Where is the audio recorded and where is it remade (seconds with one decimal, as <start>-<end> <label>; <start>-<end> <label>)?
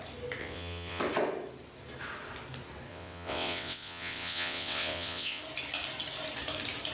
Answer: 0.0-0.4 recorded; 0.4-1.0 remade; 1.0-2.9 recorded; 2.9-5.4 remade; 5.4-6.9 recorded